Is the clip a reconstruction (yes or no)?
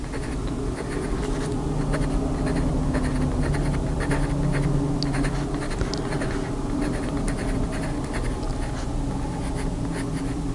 no